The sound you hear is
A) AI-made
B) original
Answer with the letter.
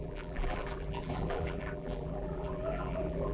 A